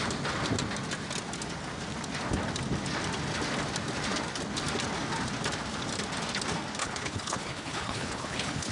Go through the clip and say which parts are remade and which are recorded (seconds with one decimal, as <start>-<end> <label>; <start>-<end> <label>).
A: 0.0-6.8 recorded; 6.8-8.7 remade